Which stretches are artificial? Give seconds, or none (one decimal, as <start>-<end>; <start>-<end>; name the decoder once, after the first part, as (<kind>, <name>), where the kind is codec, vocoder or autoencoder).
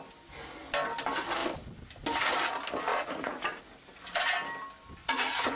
2.9-3.6 (vocoder, Vocos); 5.0-5.6